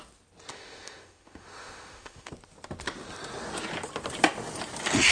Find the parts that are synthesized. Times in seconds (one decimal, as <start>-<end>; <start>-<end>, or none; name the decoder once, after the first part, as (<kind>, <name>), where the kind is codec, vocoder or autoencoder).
0.5-2.3 (autoencoder, DAC-VAE)